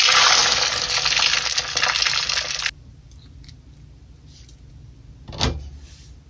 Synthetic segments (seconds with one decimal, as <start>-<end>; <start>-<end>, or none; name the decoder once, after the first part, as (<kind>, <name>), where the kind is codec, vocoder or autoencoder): none